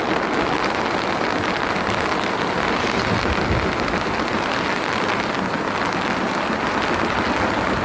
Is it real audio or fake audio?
real